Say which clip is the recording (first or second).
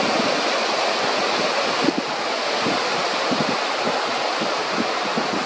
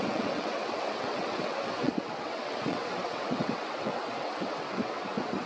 first